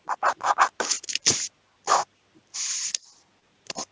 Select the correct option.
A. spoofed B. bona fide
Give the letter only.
B